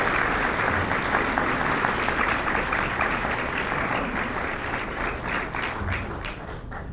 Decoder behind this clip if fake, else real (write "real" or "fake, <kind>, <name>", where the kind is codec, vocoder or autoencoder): real